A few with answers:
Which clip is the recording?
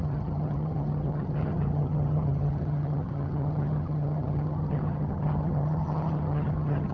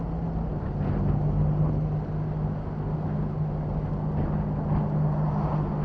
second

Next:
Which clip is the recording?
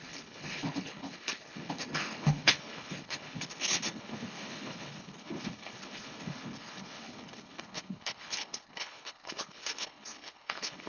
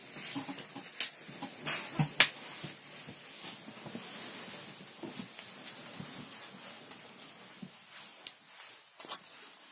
second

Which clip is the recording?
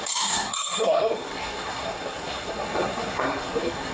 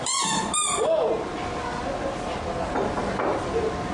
second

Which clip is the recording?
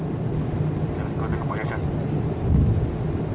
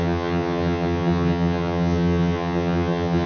first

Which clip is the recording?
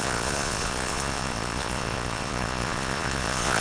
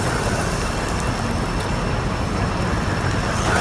second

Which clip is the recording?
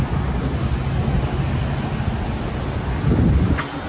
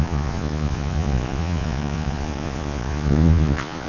first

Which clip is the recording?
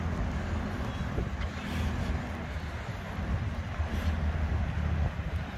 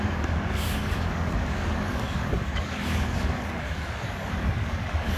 first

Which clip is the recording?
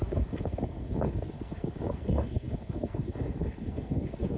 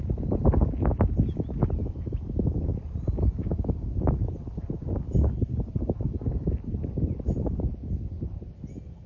second